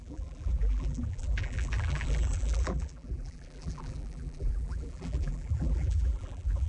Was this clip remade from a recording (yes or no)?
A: yes